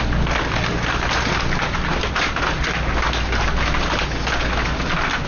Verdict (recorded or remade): recorded